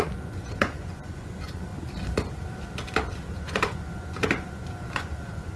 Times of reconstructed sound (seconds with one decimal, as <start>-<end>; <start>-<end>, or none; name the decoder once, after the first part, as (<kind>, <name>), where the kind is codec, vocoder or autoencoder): 0.0-1.7 (vocoder, Vocos); 3.4-5.6